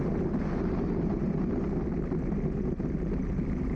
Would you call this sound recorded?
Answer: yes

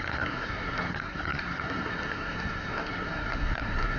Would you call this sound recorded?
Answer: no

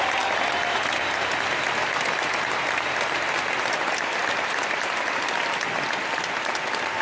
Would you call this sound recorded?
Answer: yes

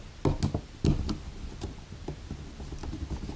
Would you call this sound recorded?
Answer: yes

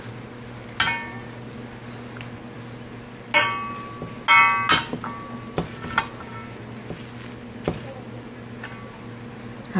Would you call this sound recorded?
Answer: yes